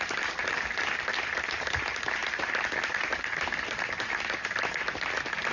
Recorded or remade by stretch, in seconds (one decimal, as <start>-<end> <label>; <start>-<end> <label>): 0.0-5.5 recorded